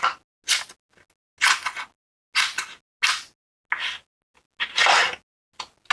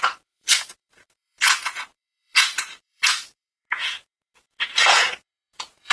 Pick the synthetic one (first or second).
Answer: second